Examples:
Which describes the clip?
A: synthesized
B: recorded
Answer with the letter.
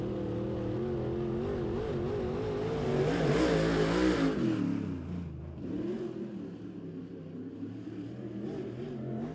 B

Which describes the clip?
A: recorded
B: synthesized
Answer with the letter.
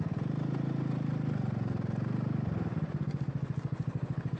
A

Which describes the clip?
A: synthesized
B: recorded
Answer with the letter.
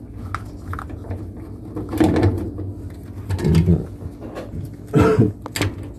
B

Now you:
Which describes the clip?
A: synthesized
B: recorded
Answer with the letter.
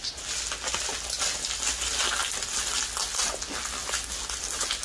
B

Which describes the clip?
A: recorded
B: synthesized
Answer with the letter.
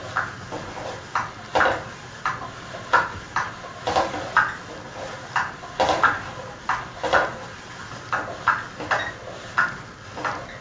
A